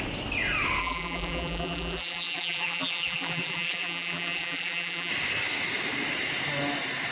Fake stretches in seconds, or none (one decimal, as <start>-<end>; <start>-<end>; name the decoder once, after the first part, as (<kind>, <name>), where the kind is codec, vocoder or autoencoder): 0.8-5.1 (vocoder, BigVGAN v2)